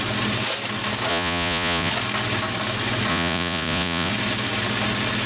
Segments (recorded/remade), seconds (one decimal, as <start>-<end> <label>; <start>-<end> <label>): 0.0-1.1 recorded; 1.1-1.9 remade; 1.9-3.1 recorded; 3.1-4.1 remade; 4.1-5.3 recorded